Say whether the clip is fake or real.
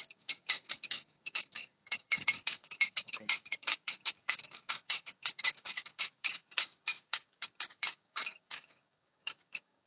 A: fake